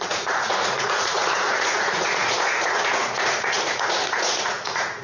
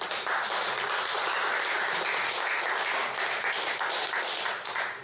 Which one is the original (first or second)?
second